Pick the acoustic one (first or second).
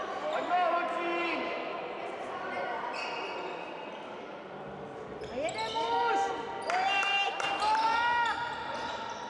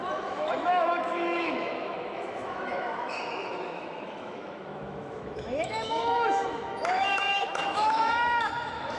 first